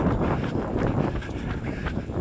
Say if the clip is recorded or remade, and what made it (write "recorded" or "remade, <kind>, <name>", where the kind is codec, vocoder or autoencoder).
recorded